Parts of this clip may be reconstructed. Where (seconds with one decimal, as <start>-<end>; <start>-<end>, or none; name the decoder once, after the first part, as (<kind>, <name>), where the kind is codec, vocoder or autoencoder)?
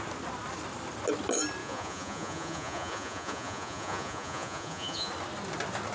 1.6-5.1 (vocoder, Vocos)